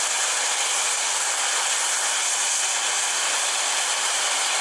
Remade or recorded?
recorded